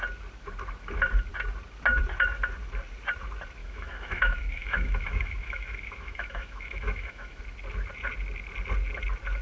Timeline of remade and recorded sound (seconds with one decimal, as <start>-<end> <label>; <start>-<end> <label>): 0.0-3.6 recorded; 3.6-7.4 remade; 7.4-9.4 recorded